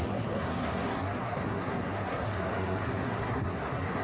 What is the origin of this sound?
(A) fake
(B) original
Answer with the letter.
A